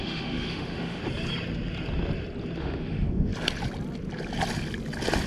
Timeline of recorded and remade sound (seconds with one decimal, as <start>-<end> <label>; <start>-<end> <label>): 0.0-1.0 remade; 1.0-2.6 recorded; 2.6-3.3 remade; 3.3-5.3 recorded